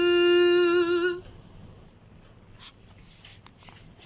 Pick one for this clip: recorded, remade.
recorded